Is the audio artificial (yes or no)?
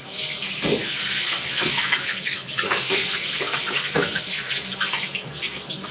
yes